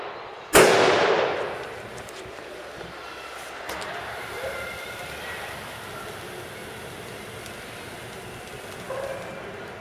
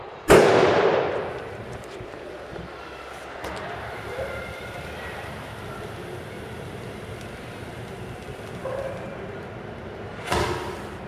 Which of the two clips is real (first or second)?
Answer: first